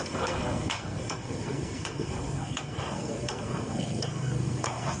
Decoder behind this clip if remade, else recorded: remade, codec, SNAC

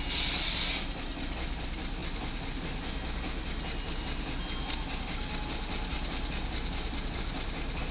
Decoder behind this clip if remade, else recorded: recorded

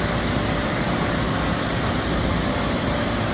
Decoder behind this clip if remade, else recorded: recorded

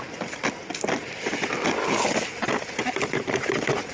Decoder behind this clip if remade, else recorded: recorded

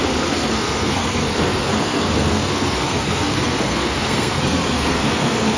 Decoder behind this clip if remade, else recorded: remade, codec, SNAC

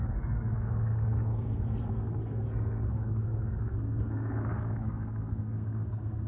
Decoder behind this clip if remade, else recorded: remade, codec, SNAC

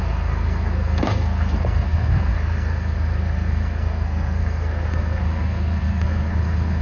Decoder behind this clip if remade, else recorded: remade, codec, SNAC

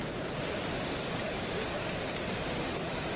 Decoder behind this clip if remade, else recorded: recorded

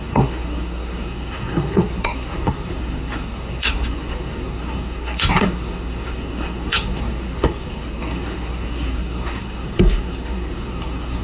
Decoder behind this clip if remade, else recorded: remade, codec, SNAC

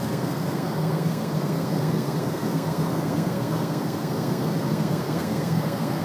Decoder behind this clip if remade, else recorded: remade, codec, SNAC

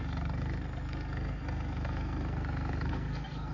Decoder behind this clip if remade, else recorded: remade, codec, SNAC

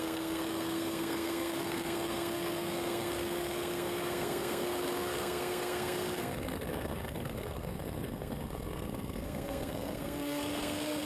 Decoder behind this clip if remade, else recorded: remade, codec, SNAC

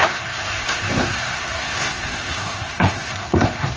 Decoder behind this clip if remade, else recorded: remade, codec, SNAC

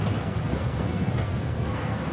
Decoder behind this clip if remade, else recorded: remade, codec, SNAC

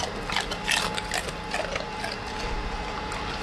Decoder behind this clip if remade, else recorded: recorded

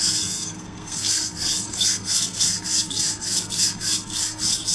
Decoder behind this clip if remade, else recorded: remade, codec, SNAC